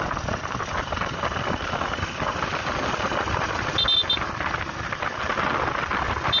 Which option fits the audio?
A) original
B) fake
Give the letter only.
A